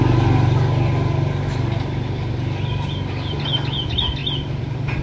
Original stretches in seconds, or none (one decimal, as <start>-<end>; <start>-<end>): 0.0-5.0